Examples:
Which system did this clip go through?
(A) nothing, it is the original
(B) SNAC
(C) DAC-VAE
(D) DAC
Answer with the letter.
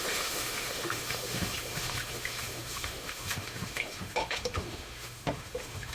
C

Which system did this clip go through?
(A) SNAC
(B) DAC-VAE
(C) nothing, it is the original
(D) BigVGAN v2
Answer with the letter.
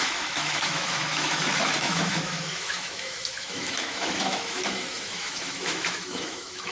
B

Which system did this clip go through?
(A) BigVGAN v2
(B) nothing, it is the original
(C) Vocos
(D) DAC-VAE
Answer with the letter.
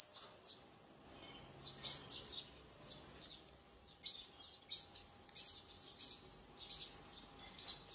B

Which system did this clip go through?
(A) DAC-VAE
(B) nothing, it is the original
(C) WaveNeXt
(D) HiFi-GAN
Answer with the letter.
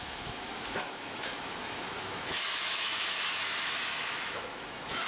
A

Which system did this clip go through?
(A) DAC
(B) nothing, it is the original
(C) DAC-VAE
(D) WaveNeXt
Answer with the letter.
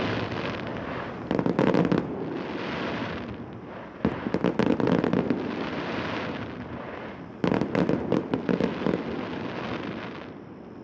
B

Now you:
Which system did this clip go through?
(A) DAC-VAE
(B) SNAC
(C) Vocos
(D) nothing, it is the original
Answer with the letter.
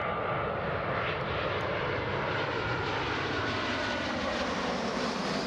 D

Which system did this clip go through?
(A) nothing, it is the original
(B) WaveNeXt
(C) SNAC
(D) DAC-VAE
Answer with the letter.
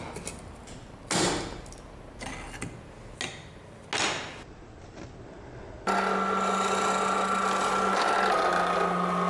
A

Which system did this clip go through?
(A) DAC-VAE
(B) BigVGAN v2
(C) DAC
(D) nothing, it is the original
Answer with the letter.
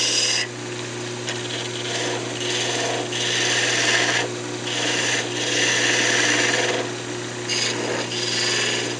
D